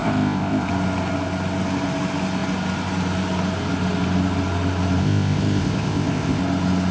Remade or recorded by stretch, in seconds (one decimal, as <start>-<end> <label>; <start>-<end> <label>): 0.0-0.7 remade; 0.7-5.0 recorded; 5.0-6.4 remade; 6.4-6.9 recorded